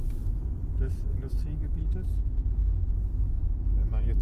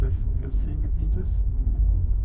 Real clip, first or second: first